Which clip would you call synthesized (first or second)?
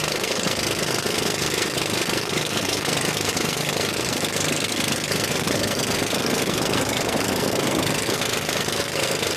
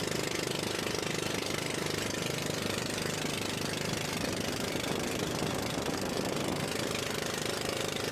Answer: first